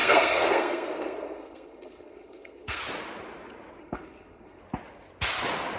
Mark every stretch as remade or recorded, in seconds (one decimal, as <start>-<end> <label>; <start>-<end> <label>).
0.0-2.8 remade; 2.8-3.8 recorded; 3.8-4.6 remade; 4.6-5.8 recorded